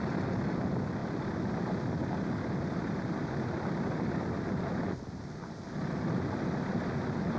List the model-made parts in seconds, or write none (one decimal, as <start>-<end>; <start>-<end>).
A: none